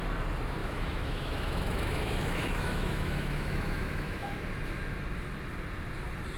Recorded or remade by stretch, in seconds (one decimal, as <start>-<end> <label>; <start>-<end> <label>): 0.0-0.6 recorded; 0.6-4.4 remade; 4.4-6.4 recorded